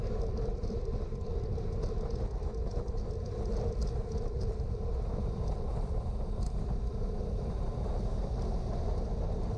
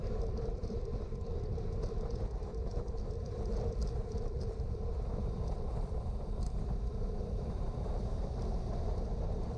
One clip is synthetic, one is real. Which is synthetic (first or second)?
second